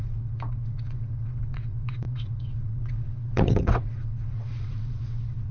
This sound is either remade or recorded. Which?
remade